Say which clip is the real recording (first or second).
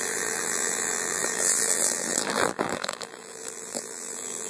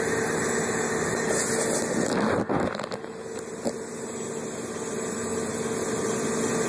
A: second